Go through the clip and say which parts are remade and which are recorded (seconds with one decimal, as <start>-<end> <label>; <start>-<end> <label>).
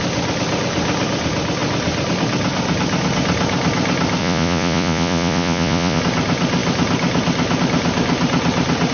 0.0-4.2 recorded; 4.2-6.0 remade; 6.0-8.9 recorded